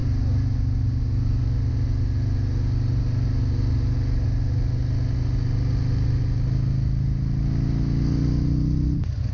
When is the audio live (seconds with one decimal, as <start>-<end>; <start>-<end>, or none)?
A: 0.0-9.3